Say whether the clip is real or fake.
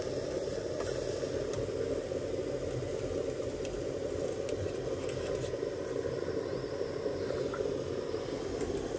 real